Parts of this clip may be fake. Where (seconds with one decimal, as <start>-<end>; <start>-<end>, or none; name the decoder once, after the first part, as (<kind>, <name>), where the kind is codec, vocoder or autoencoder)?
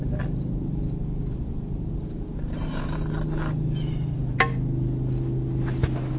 none